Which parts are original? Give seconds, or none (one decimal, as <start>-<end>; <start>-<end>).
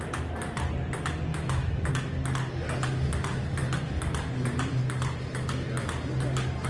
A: 0.0-1.3; 1.9-6.7